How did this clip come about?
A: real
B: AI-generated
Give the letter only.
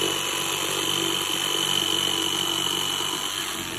A